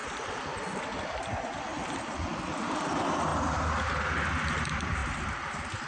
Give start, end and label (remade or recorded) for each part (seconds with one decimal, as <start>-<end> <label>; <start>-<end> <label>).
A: 0.0-1.0 recorded; 1.0-3.3 remade; 3.3-4.5 recorded; 4.5-5.9 remade